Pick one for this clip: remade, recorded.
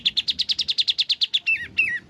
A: recorded